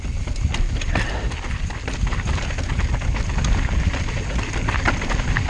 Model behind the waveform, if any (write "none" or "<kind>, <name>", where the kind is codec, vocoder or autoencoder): none